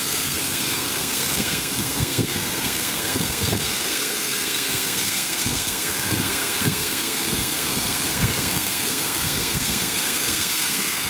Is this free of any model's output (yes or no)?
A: no